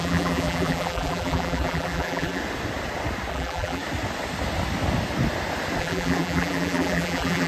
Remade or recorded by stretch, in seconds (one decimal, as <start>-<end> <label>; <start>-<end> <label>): 0.0-2.4 remade; 2.4-3.3 recorded; 3.3-3.8 remade; 3.8-5.8 recorded; 5.8-7.5 remade